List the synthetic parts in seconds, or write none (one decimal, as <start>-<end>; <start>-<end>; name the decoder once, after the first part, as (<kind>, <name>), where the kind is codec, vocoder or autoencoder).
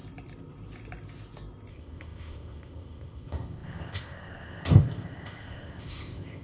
1.7-6.4 (codec, ZipCodec)